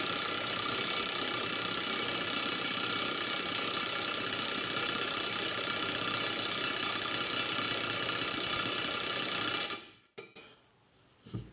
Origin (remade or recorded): recorded